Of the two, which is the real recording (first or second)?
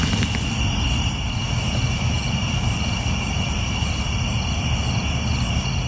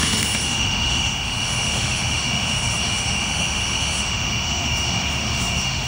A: first